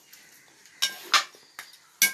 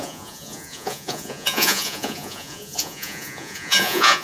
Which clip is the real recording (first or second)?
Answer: first